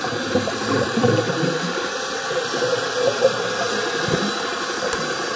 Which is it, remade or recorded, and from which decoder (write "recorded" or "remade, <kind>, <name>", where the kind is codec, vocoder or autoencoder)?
remade, vocoder, BigVGAN v2